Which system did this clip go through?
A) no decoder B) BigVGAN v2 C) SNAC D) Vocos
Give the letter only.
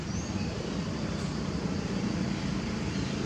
B